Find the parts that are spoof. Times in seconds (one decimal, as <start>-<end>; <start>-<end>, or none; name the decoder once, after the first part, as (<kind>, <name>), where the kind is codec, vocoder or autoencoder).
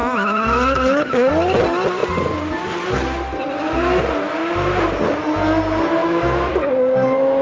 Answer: 0.0-1.3 (autoencoder, DAC-VAE); 6.0-6.5